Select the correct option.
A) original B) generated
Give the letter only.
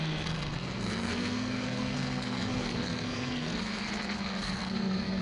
B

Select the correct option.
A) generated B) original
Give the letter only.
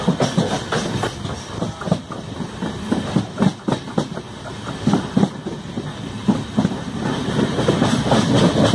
B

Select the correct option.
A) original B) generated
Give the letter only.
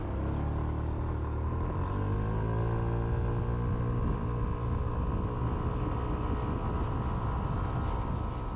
A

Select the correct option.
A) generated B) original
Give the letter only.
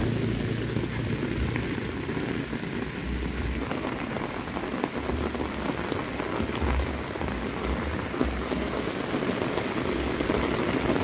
B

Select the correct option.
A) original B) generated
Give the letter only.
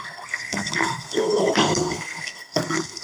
B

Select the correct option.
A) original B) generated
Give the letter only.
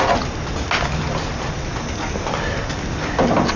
A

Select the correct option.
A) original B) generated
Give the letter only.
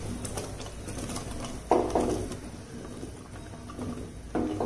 A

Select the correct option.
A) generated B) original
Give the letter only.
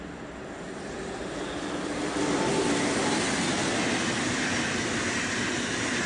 B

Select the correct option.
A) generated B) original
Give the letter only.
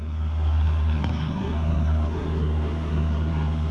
A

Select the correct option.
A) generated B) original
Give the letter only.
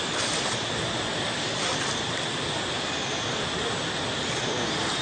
B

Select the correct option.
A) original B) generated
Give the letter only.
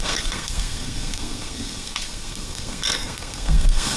B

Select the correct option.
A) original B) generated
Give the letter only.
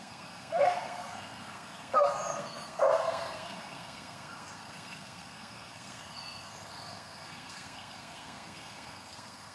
B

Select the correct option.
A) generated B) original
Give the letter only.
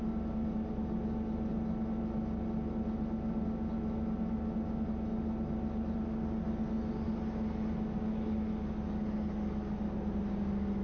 B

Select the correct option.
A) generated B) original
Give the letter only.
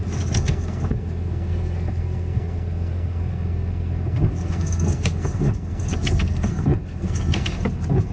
A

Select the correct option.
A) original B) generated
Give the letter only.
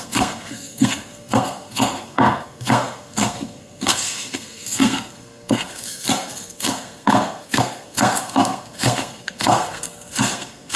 B